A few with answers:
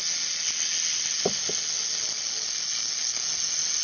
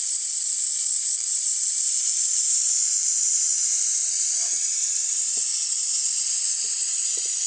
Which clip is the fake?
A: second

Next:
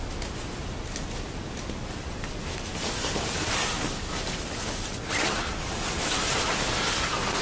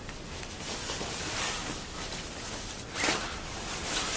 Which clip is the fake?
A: second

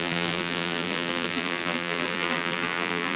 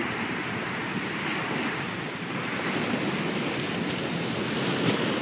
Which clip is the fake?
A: first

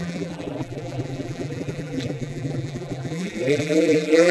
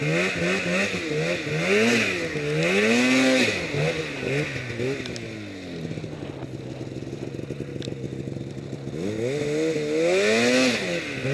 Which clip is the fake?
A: first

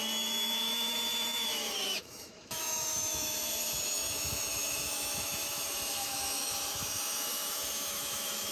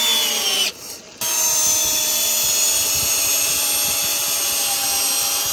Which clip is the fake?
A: first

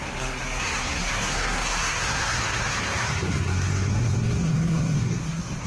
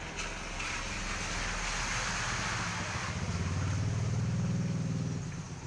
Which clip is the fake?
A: first